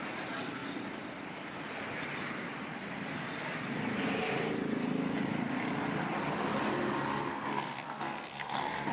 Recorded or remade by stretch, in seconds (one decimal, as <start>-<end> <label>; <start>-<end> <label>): 0.0-7.3 recorded; 7.3-8.9 remade